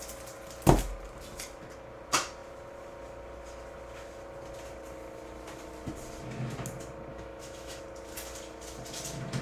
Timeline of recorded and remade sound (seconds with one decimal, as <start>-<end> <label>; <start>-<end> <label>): 0.0-7.1 recorded; 7.1-7.8 remade; 7.8-9.4 recorded